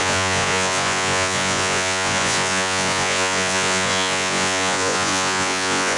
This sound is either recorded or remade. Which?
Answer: remade